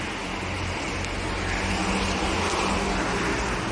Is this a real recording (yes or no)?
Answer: yes